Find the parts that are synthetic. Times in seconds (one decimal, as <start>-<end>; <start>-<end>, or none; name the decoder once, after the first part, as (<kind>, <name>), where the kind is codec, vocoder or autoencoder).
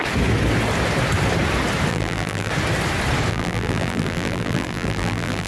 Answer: 1.9-2.5 (vocoder, BigVGAN v2); 3.3-5.5